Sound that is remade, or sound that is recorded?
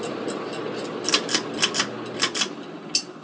recorded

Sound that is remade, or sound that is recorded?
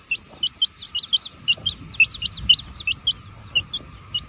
recorded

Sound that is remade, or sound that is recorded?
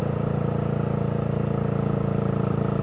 recorded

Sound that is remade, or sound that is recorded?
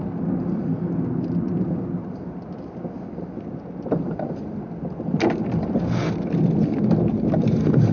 recorded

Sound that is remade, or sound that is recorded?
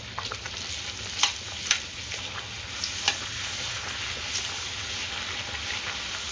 recorded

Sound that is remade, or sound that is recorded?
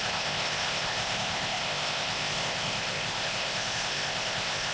remade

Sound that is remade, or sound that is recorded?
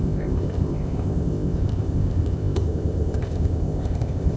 remade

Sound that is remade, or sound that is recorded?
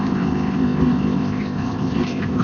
remade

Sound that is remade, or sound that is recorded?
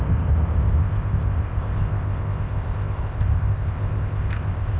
remade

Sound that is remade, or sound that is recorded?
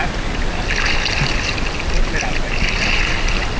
recorded